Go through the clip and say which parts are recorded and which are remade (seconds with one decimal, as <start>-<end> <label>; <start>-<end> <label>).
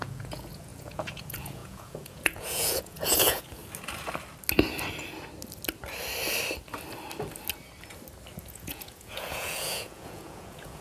0.0-3.6 remade; 3.6-8.4 recorded; 8.4-10.8 remade